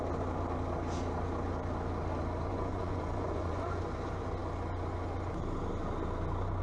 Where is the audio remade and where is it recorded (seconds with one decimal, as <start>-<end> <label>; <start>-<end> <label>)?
0.0-2.5 recorded; 2.5-3.8 remade; 3.8-6.6 recorded